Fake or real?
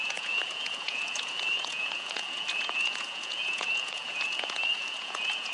fake